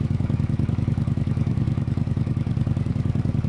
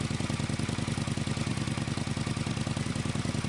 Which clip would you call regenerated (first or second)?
first